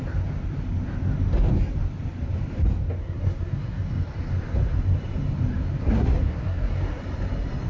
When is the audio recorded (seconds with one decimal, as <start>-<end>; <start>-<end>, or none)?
0.0-3.0; 3.8-5.8; 7.0-7.7